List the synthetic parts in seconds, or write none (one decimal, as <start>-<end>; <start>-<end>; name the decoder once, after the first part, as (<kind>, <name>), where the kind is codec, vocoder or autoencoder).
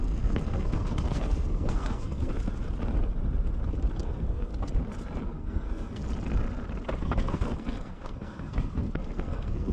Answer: 0.0-2.3 (codec, SNAC); 4.0-4.5; 5.2-6.0; 7.0-9.7